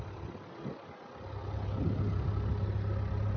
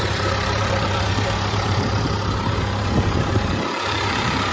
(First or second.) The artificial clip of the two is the second